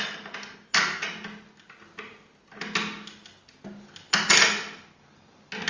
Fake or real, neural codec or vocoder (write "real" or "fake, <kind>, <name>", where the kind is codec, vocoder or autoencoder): real